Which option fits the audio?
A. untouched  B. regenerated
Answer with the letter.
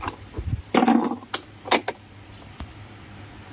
A